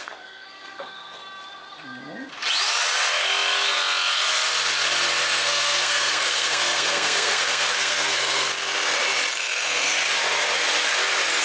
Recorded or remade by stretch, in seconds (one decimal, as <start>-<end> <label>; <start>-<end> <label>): 0.0-1.2 remade; 1.2-5.2 recorded; 5.2-8.5 remade; 8.5-9.3 recorded; 9.3-9.9 remade; 9.9-11.4 recorded